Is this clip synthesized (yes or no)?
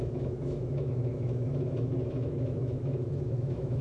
yes